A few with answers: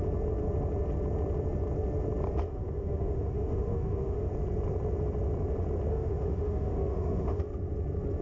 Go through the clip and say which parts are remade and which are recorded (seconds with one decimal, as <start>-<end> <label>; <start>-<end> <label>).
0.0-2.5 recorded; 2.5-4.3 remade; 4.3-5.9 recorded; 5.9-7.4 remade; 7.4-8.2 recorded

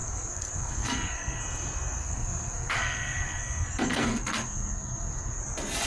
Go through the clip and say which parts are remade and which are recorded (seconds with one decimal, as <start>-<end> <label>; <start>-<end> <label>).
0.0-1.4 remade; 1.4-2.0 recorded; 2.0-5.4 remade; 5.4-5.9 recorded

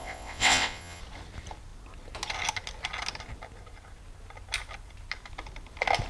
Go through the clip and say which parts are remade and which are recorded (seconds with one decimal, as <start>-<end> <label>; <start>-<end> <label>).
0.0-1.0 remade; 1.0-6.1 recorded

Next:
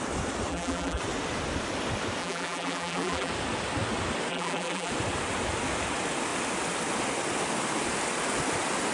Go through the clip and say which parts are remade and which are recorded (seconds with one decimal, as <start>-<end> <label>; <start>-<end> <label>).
0.0-0.5 recorded; 0.5-1.0 remade; 1.0-2.2 recorded; 2.2-3.3 remade; 3.3-4.3 recorded; 4.3-4.9 remade; 4.9-8.9 recorded

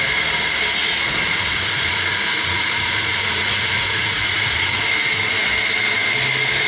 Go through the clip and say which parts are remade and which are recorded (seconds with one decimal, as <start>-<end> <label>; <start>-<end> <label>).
0.0-0.8 recorded; 0.8-4.8 remade; 4.8-6.7 recorded

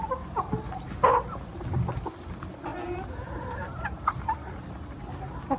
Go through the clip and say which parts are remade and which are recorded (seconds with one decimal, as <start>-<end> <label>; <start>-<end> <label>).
0.0-5.6 recorded

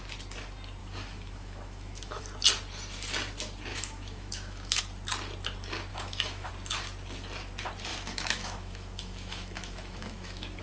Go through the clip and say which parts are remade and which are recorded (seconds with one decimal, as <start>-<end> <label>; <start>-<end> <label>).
0.0-0.8 recorded; 0.8-2.2 remade; 2.2-3.7 recorded; 3.7-4.8 remade; 4.8-5.9 recorded; 5.9-6.5 remade; 6.5-7.9 recorded; 7.9-10.6 remade

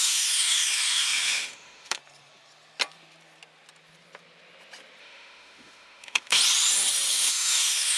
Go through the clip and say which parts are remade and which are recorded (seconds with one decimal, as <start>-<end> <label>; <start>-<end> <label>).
0.0-2.0 remade; 2.0-5.0 recorded; 5.0-6.4 remade; 6.4-7.1 recorded; 7.1-8.0 remade